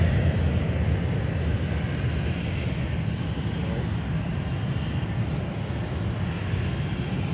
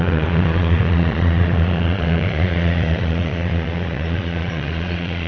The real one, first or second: first